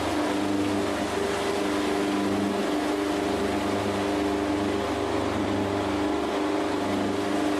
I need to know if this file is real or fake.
real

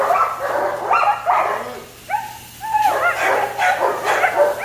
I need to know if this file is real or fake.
real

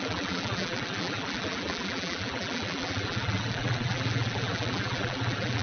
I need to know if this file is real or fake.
fake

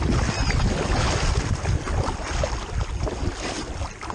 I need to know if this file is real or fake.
real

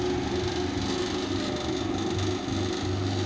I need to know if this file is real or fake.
real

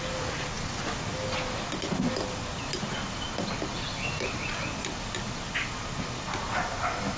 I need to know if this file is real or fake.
real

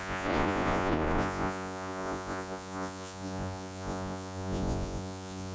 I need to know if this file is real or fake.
fake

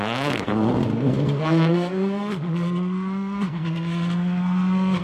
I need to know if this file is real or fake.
fake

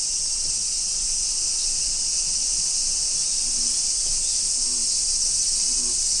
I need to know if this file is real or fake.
real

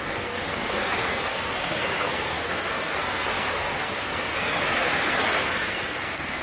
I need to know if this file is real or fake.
fake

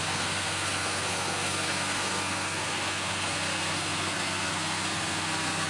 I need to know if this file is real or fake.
fake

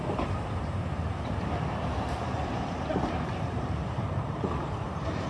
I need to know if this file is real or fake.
fake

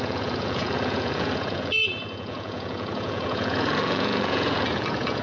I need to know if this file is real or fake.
fake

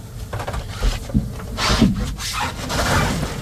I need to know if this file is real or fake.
real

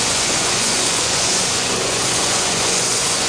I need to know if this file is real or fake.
fake